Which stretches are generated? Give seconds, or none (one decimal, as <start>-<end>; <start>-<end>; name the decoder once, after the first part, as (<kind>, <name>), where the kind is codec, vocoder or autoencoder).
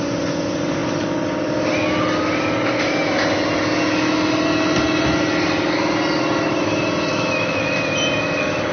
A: 7.1-7.6 (autoencoder, DAC-VAE)